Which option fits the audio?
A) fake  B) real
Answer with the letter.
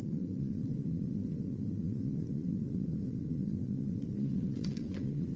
A